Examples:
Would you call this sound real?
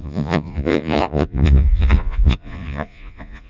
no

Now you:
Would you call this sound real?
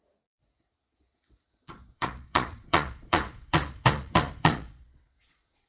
no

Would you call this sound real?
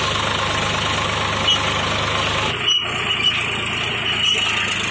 yes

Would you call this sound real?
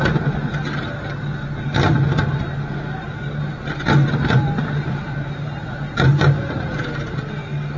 yes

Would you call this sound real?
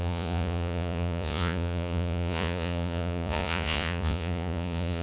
no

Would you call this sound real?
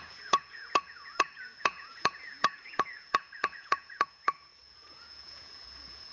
no